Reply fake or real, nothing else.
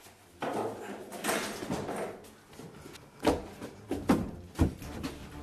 real